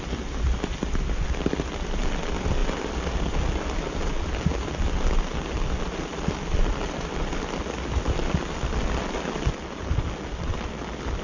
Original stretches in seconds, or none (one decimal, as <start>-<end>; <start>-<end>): 0.0-11.2